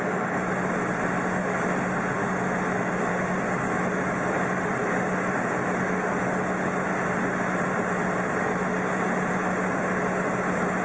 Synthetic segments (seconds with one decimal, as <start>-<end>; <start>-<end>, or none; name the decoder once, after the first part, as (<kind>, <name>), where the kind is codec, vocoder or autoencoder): 2.2-3.1 (autoencoder, DAC-VAE)